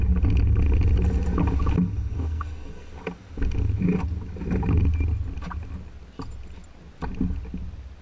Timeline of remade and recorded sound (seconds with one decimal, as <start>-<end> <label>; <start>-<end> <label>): 0.0-2.1 recorded; 2.1-2.9 remade; 2.9-8.0 recorded